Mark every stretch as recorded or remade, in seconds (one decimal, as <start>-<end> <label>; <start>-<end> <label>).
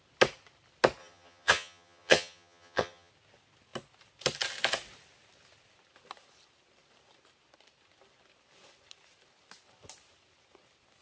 0.0-1.0 recorded; 1.0-3.1 remade; 3.1-11.0 recorded